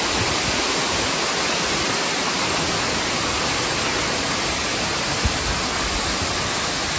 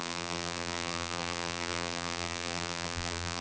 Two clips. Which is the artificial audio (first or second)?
second